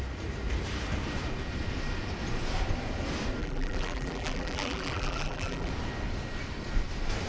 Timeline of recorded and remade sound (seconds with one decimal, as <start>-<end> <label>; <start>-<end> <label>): 0.0-3.4 recorded; 3.4-5.7 remade; 5.7-7.3 recorded